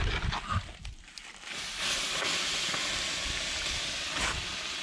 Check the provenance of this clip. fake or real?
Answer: real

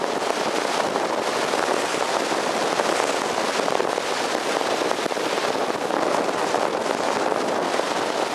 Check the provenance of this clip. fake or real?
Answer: real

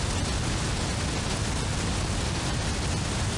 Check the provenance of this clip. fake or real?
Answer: real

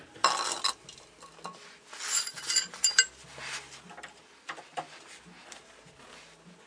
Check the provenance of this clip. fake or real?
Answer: real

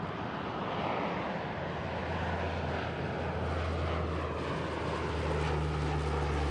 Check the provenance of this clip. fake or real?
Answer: real